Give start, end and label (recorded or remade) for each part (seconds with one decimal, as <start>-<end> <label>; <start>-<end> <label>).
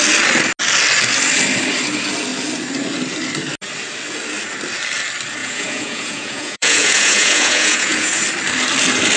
0.0-5.4 recorded; 5.4-8.2 remade; 8.2-9.2 recorded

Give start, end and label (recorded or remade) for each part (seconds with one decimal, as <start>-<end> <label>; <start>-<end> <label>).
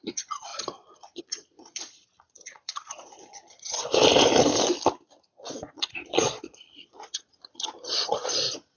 0.0-4.0 remade; 4.0-5.3 recorded; 5.3-8.8 remade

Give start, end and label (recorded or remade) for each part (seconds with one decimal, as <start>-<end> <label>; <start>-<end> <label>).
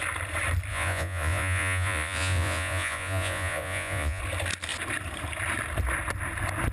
0.0-0.7 recorded; 0.7-4.2 remade; 4.2-6.7 recorded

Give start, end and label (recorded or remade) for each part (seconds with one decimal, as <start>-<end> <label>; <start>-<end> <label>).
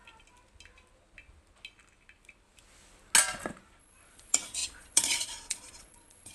0.0-3.8 recorded; 3.8-6.3 remade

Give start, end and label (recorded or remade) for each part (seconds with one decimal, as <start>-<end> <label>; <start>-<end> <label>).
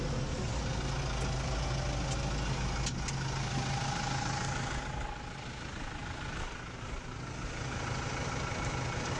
0.0-9.2 recorded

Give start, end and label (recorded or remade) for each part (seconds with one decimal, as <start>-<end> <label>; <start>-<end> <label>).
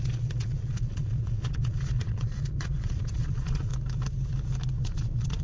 0.0-3.7 remade; 3.7-4.8 recorded; 4.8-5.4 remade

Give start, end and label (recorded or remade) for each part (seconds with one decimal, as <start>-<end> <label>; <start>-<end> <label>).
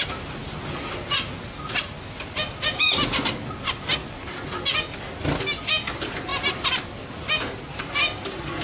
0.0-8.6 recorded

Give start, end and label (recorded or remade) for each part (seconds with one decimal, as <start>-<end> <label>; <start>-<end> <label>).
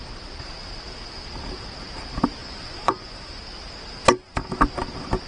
0.0-2.4 recorded; 2.4-3.4 remade; 3.4-5.3 recorded